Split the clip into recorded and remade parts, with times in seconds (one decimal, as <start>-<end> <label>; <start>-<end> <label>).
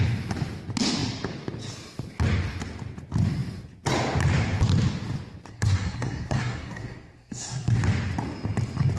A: 0.0-5.5 recorded; 5.5-7.8 remade; 7.8-9.0 recorded